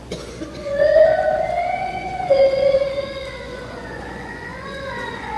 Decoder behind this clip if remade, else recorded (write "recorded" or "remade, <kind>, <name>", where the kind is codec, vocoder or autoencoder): remade, vocoder, Vocos